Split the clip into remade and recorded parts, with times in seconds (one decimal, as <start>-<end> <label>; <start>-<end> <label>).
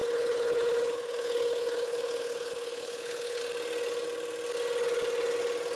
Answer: 0.0-3.4 remade; 3.4-5.8 recorded